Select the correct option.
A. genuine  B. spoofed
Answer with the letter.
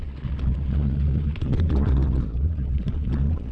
B